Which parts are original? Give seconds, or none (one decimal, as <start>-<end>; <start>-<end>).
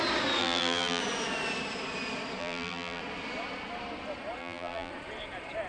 0.0-0.4; 1.0-2.4; 3.0-4.4; 4.9-5.7